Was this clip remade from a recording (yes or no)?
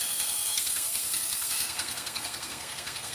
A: yes